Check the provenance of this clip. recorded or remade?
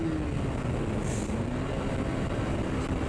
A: recorded